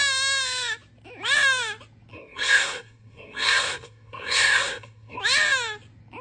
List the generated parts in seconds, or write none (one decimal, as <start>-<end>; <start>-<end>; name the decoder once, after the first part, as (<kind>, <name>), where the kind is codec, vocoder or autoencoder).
2.1-5.2 (codec, SNAC)